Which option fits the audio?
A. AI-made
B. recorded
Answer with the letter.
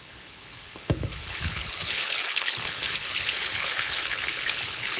A